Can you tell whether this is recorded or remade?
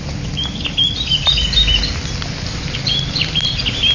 recorded